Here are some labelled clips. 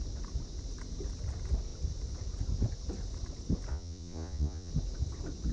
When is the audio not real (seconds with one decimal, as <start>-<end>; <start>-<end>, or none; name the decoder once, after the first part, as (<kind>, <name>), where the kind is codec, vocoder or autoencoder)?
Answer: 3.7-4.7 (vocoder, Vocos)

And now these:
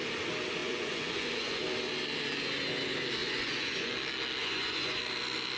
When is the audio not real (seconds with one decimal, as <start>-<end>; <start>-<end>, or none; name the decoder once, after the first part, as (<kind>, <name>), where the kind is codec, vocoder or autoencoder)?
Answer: 0.6-1.6 (vocoder, Vocos); 3.2-3.9; 4.4-5.0

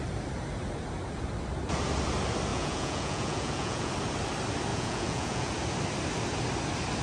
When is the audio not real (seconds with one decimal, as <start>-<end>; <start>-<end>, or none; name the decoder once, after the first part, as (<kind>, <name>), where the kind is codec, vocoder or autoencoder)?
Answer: 2.5-3.9 (vocoder, Vocos); 4.7-5.5

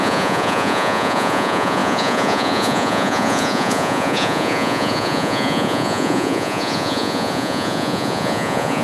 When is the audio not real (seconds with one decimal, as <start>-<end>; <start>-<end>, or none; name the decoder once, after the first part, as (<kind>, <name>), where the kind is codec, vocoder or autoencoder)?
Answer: 0.0-8.8 (vocoder, Vocos)

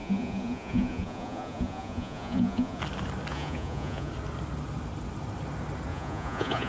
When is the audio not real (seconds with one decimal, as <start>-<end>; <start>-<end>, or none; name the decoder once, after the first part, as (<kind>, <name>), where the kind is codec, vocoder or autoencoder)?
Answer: 0.0-2.8 (vocoder, Vocos); 3.3-4.1; 5.9-6.7

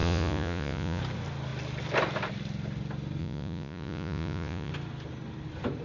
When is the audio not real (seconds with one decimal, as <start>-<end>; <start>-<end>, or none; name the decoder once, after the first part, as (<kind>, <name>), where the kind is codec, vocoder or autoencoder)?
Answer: 0.0-1.0 (vocoder, Vocos); 3.2-4.7

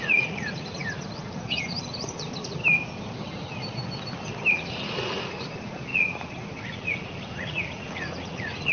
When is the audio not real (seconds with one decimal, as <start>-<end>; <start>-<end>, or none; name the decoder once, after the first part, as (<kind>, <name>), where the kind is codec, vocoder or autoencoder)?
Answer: 0.0-2.6 (vocoder, Vocos); 4.5-8.7

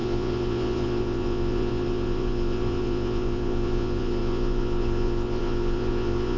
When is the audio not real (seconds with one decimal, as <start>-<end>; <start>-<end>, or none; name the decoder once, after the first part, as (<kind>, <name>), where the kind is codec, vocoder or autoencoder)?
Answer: 0.0-6.4 (vocoder, Vocos)